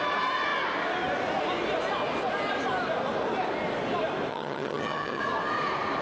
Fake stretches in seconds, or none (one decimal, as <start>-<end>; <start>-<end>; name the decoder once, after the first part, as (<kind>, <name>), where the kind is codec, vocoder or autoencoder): 4.3-5.2 (vocoder, HiFi-GAN)